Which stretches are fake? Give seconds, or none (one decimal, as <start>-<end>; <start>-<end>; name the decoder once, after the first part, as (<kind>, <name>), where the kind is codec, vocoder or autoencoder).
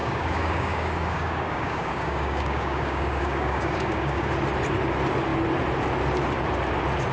0.0-4.3 (codec, DAC)